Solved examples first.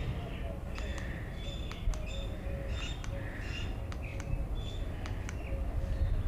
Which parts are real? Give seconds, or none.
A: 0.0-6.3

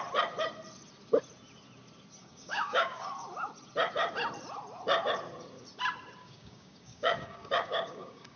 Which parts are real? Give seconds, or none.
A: 0.0-2.2; 3.1-6.2